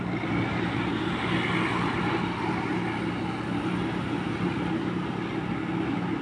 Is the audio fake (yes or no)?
no